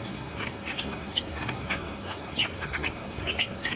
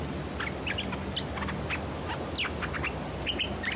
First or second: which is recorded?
second